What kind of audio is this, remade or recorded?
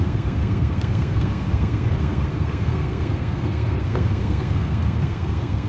remade